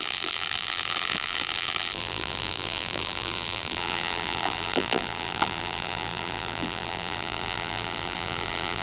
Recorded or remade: remade